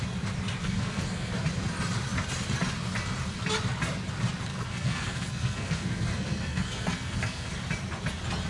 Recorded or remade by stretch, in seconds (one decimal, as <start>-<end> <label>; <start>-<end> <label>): 0.0-0.6 recorded; 0.6-1.3 remade; 1.3-4.5 recorded; 4.5-7.5 remade; 7.5-8.5 recorded